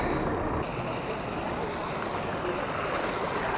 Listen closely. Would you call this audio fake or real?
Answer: real